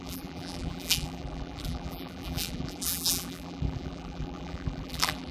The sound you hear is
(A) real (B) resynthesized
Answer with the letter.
B